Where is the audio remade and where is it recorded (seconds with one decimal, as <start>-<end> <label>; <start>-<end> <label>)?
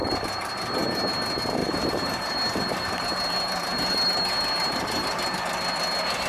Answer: 0.0-1.1 remade; 1.1-1.6 recorded; 1.6-5.4 remade; 5.4-6.3 recorded